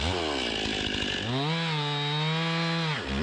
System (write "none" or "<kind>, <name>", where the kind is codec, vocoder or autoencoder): none